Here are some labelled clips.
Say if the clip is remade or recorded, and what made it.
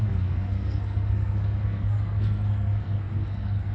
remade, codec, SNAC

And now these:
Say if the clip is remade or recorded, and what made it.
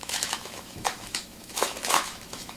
remade, autoencoder, DAC-VAE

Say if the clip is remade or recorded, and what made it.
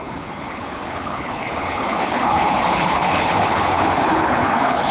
remade, codec, HILCodec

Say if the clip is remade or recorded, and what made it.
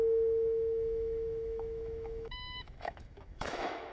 remade, autoencoder, DAC-VAE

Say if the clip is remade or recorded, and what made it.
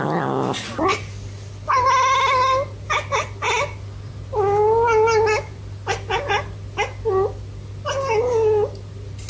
recorded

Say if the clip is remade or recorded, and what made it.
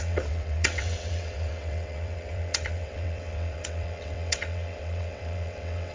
remade, vocoder, WaveNeXt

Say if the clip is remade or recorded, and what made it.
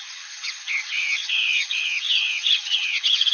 remade, vocoder, HiFi-GAN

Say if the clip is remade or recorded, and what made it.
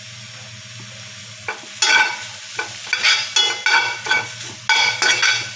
recorded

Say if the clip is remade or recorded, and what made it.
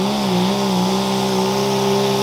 recorded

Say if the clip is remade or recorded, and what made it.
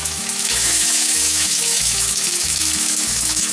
remade, autoencoder, DAC-VAE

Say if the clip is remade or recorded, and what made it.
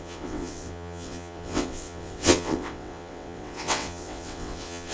remade, vocoder, WaveNeXt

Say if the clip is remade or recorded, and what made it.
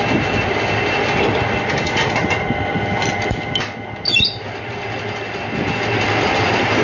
recorded